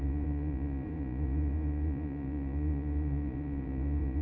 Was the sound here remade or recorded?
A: remade